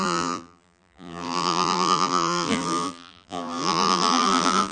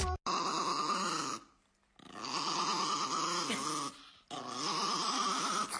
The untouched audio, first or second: second